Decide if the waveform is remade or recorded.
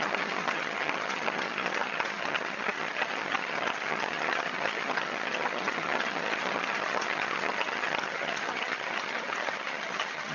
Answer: remade